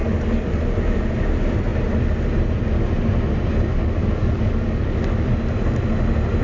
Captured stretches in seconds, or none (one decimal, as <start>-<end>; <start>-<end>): 0.6-3.7; 5.3-6.4